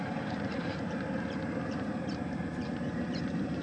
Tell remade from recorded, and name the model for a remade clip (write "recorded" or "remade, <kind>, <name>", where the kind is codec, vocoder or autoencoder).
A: remade, vocoder, BigVGAN v2